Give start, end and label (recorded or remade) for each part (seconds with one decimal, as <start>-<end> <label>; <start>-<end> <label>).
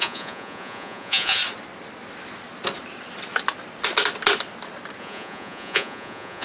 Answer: 0.0-1.4 remade; 1.4-5.0 recorded; 5.0-6.4 remade